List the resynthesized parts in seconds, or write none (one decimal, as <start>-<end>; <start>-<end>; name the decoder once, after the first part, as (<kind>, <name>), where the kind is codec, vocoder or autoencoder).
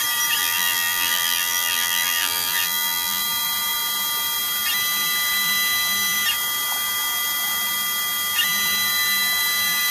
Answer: 0.4-3.2 (vocoder, BigVGAN v2)